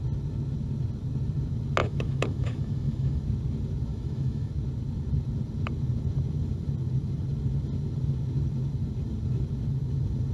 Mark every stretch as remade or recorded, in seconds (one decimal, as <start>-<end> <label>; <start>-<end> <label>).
0.0-1.8 recorded; 1.8-3.2 remade; 3.2-3.9 recorded; 3.9-4.5 remade; 4.5-10.3 recorded